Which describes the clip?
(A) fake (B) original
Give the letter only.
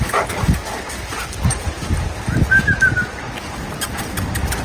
B